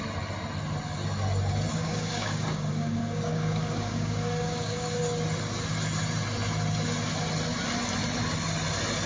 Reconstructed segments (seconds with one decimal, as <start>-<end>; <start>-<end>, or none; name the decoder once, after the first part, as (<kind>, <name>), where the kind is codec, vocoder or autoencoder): 1.7-5.0 (codec, DAC)